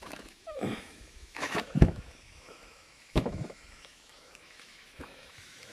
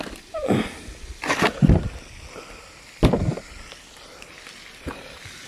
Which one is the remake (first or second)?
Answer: first